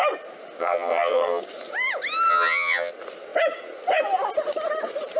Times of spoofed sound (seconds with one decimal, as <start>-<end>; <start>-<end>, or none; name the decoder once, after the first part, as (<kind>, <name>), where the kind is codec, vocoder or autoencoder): 0.6-1.4 (vocoder, HiFi-GAN); 2.3-2.9